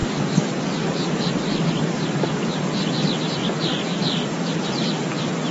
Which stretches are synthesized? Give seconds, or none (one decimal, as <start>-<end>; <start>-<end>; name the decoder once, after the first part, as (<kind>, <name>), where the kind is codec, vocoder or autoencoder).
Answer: 0.0-5.5 (vocoder, BigVGAN v2)